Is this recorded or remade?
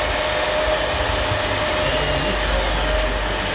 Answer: recorded